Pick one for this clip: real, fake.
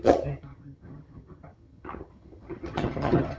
fake